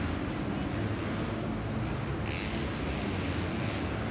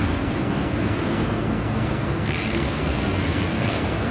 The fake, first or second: second